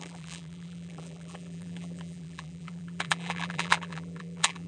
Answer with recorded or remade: remade